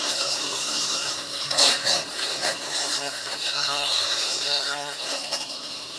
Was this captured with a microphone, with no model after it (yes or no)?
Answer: no